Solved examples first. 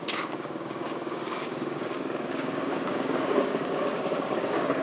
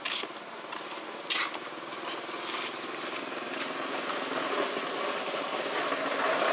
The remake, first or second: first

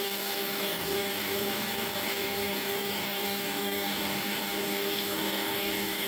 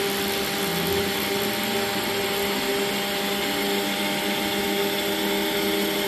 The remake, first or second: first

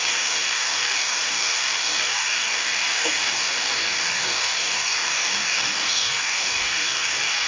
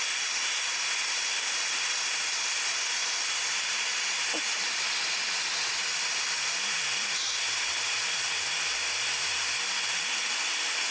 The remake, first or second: first